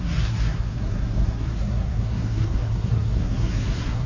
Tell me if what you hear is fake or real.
fake